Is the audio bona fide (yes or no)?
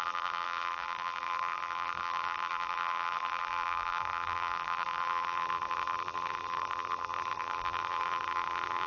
no